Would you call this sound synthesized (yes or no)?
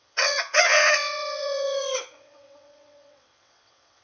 yes